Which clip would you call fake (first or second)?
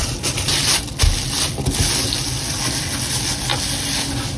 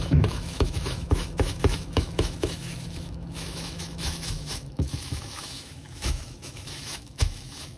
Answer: second